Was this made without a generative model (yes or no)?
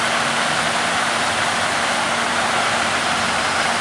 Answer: yes